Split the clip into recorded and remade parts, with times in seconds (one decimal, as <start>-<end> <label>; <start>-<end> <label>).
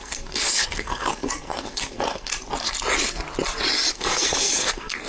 0.0-2.3 remade; 2.3-3.9 recorded; 3.9-5.1 remade